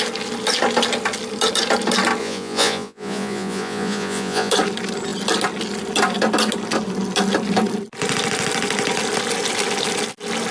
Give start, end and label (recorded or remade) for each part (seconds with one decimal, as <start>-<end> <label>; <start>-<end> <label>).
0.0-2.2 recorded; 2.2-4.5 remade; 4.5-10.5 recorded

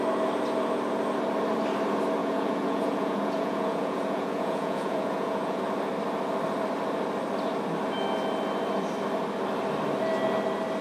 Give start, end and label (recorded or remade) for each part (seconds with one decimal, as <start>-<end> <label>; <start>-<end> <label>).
0.0-2.2 recorded; 2.2-5.6 remade; 5.6-10.8 recorded

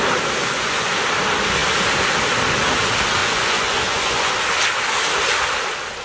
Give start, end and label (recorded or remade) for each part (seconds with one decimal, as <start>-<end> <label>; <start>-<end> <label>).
0.0-0.4 recorded; 0.4-0.9 remade; 0.9-3.2 recorded; 3.2-4.3 remade; 4.3-6.0 recorded